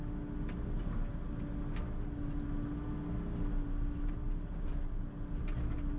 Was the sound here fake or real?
real